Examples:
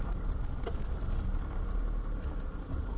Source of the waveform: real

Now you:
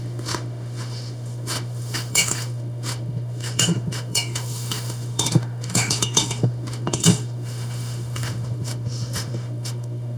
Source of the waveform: fake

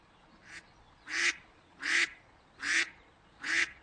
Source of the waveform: fake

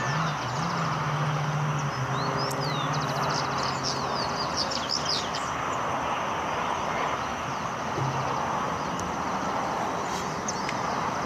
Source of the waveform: real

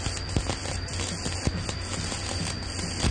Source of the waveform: real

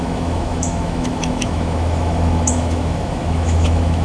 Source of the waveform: fake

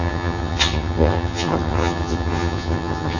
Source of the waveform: fake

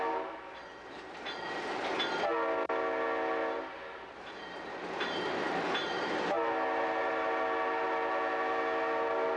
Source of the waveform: real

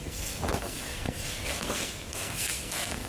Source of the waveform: fake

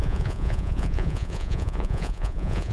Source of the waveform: fake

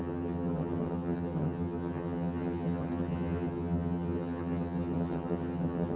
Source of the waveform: fake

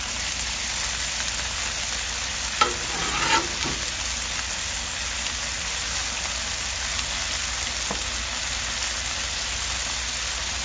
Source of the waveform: real